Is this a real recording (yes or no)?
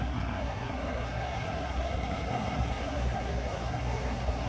no